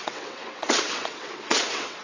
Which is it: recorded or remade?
remade